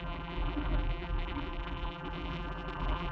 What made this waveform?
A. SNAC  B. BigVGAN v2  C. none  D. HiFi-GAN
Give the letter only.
B